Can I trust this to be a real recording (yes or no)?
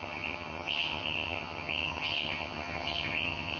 no